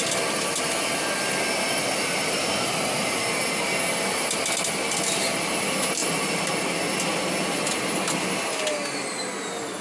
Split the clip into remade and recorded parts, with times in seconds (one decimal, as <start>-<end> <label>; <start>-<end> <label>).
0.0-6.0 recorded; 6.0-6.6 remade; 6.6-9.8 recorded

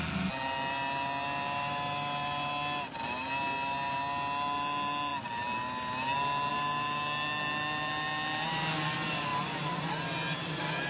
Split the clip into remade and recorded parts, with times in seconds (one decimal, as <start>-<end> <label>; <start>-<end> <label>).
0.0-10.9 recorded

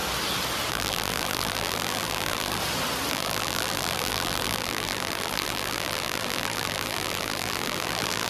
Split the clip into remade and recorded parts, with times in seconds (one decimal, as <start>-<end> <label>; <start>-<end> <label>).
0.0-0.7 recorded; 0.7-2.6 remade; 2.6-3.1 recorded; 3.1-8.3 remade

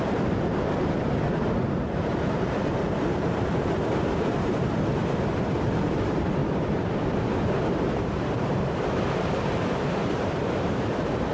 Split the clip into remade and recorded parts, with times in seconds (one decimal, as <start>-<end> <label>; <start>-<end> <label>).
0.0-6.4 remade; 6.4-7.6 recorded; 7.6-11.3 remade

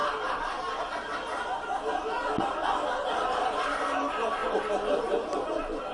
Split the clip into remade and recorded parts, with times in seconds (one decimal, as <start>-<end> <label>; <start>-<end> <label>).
0.0-0.8 remade; 0.8-3.0 recorded; 3.0-3.8 remade; 3.8-4.4 recorded; 4.4-5.5 remade; 5.5-5.9 recorded

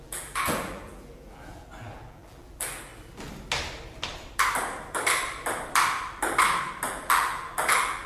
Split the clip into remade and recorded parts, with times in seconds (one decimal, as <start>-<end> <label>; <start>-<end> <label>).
0.0-2.9 remade; 2.9-6.9 recorded; 6.9-8.1 remade